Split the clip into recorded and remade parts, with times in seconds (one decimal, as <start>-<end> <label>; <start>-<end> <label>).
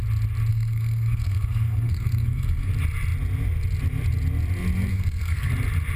0.0-0.5 recorded; 0.5-2.7 remade; 2.7-4.9 recorded; 4.9-5.5 remade; 5.5-6.0 recorded